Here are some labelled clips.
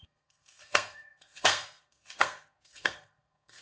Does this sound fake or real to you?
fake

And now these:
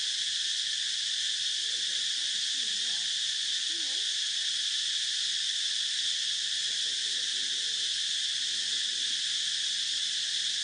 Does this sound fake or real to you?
real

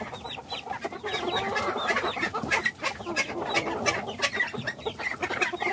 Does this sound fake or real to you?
real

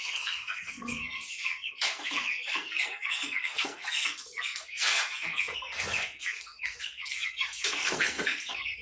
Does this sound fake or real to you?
fake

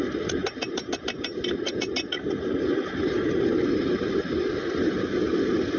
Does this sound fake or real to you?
real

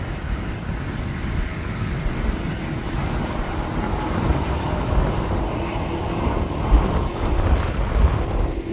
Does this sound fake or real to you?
real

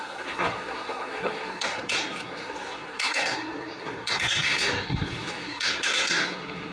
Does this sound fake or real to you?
fake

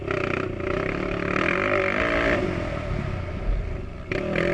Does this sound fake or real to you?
real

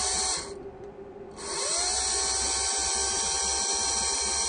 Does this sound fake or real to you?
real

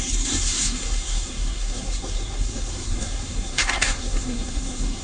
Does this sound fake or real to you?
fake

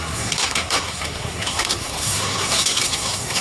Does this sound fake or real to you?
fake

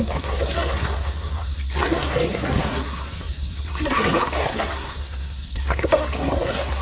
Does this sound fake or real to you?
fake